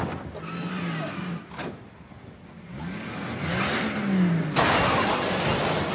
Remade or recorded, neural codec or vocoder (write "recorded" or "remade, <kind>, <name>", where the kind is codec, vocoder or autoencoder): recorded